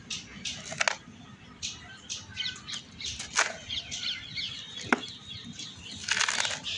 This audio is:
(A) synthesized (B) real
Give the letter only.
B